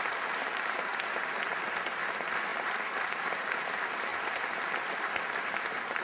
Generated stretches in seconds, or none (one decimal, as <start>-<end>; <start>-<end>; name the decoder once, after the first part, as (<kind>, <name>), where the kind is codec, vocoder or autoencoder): 0.0-0.9 (vocoder, BigVGAN v2); 1.9-4.1; 4.7-6.0